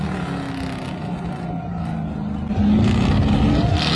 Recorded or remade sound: recorded